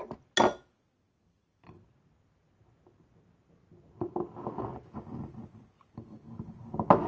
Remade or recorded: recorded